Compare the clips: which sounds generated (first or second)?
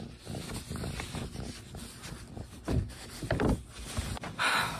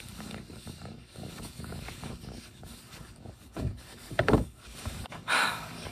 second